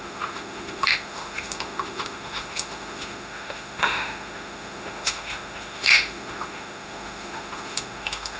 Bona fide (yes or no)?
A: no